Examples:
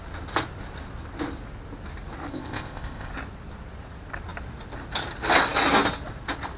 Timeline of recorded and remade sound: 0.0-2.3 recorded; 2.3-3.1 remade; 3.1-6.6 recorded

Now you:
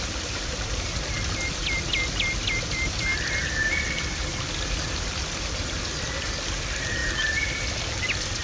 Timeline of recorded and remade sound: 0.0-8.4 recorded

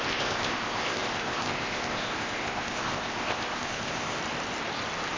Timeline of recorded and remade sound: 0.0-4.2 remade; 4.2-5.2 recorded

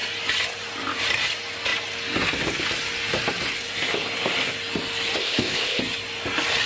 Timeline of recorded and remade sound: 0.0-5.2 recorded; 5.2-5.8 remade; 5.8-6.7 recorded

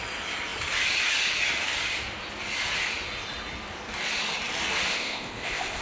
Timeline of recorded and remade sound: 0.0-4.9 recorded; 4.9-5.8 remade

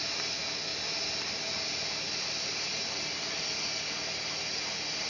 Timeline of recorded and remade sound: 0.0-5.1 recorded

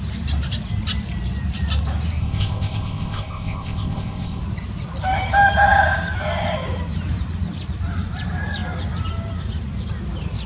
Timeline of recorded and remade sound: 0.0-2.2 recorded; 2.2-4.4 remade; 4.4-10.5 recorded

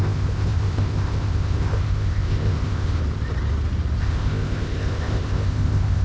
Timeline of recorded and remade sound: 0.0-3.0 remade; 3.0-4.0 recorded; 4.0-6.0 remade